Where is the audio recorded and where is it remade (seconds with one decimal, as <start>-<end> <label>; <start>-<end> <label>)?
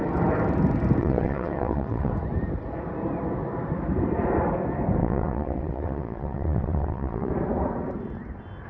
0.0-1.0 recorded; 1.0-2.1 remade; 2.1-5.0 recorded; 5.0-7.3 remade; 7.3-8.7 recorded